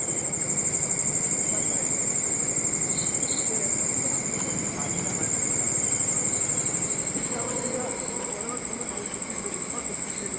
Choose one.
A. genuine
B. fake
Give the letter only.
A